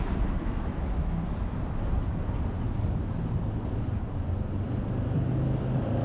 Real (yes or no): yes